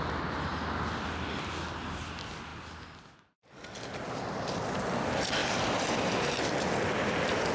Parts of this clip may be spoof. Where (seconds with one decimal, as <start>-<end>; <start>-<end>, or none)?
none